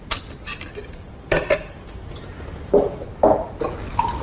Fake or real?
real